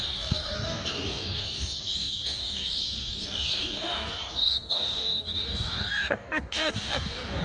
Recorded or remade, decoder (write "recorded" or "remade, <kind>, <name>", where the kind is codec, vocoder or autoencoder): remade, codec, DAC